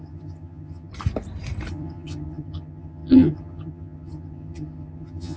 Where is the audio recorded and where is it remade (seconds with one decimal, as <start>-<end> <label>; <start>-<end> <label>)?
0.0-0.9 remade; 0.9-1.7 recorded; 1.7-5.4 remade